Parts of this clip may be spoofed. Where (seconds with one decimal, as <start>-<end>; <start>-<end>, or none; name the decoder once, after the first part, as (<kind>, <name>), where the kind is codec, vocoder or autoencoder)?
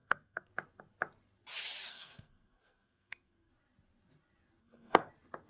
0.0-0.5 (codec, SNAC); 1.9-3.5; 4.6-5.1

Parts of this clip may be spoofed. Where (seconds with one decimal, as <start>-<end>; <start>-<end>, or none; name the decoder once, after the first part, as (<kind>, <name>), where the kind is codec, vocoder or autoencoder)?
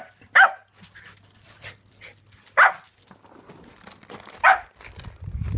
0.0-0.6 (vocoder, BigVGAN v2); 4.0-5.6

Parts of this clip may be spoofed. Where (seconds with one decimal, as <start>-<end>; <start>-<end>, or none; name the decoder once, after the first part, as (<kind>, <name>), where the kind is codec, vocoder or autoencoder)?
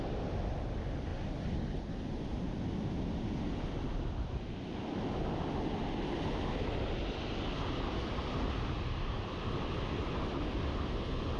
none